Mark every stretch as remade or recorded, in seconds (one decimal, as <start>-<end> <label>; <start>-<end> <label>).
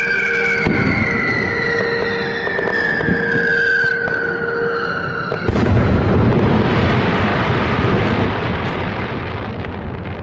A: 0.0-10.2 recorded